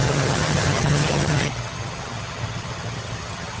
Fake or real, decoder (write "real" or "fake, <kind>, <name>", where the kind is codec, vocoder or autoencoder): fake, vocoder, HiFi-GAN